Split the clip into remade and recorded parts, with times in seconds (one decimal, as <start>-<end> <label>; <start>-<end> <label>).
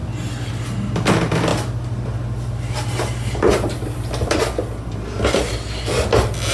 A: 0.0-6.5 recorded